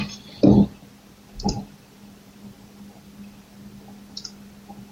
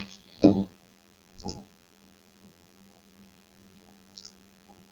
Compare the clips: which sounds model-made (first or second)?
second